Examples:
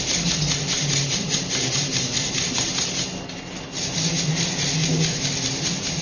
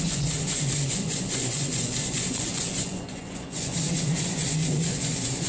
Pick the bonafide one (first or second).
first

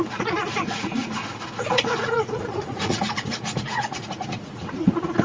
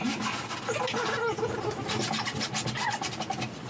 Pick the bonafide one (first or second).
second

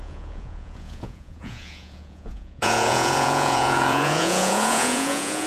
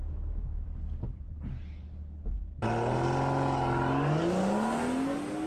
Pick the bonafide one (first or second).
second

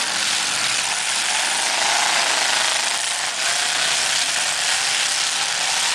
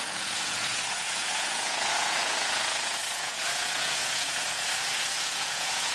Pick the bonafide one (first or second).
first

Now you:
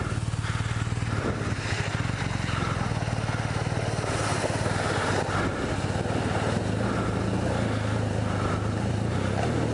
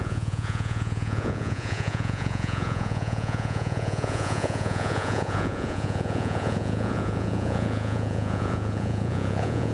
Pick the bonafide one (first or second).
first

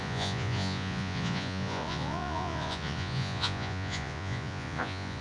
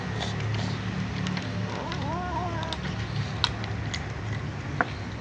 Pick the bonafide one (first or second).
second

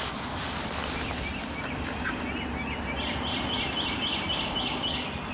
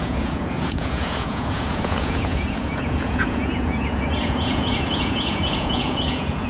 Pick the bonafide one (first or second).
first